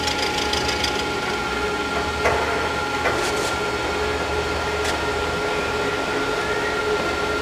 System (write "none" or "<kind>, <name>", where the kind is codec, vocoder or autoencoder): none